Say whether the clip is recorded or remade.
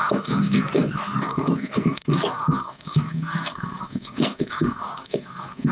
remade